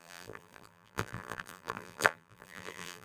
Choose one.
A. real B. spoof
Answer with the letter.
B